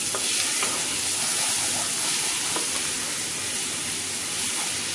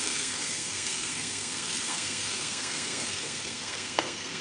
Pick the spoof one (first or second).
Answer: second